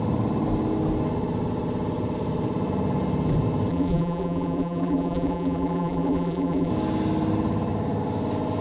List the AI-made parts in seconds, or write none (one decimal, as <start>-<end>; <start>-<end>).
3.7-6.7